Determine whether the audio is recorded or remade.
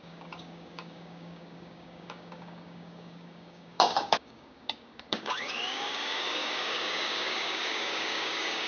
remade